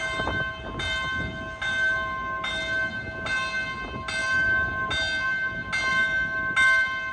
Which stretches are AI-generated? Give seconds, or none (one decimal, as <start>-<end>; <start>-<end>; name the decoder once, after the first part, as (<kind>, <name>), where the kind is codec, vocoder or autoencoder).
none